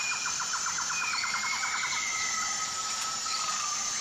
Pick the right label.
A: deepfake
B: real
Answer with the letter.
A